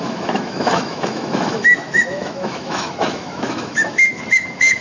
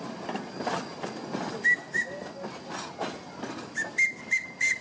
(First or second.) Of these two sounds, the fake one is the first